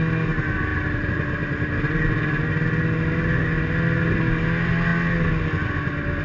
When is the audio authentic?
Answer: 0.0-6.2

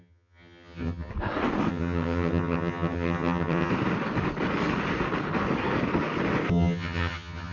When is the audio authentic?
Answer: 1.1-1.7; 3.7-6.5

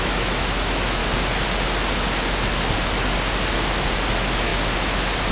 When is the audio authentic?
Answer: 1.0-4.1; 4.5-5.3

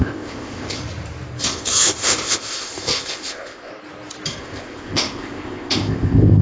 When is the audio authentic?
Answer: 0.8-1.4; 3.7-4.4

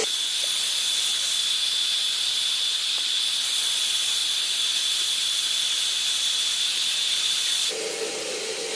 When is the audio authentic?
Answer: 0.0-8.8

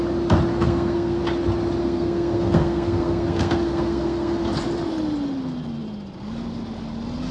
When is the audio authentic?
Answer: 0.0-0.5; 1.2-1.8; 4.4-7.3

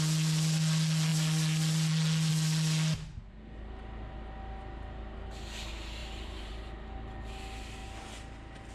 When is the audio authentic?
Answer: 0.0-8.7